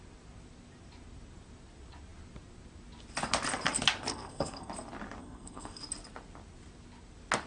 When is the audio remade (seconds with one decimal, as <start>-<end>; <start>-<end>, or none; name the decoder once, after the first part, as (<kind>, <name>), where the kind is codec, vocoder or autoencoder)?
4.1-4.7 (codec, SNAC); 5.2-5.8